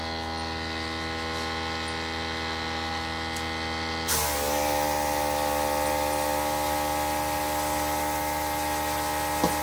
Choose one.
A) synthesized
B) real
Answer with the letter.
B